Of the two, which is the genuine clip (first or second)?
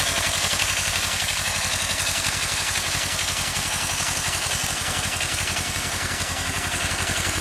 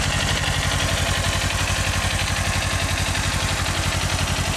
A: second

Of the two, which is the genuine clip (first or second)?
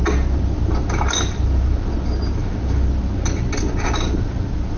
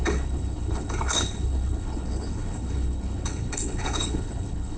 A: first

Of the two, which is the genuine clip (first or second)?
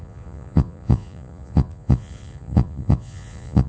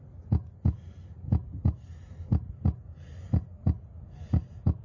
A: second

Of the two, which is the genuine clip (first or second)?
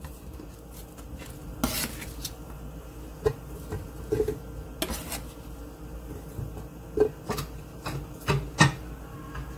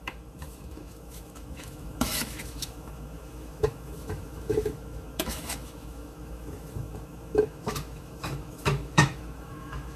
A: first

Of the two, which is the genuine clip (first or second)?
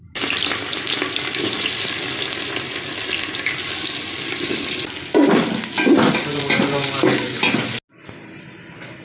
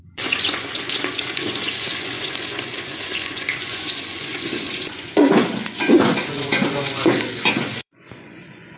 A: first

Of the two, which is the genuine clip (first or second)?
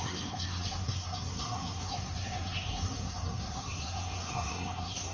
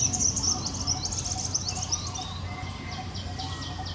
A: second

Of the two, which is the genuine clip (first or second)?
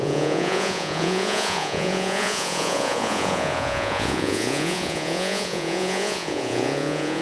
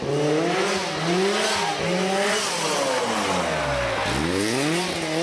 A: second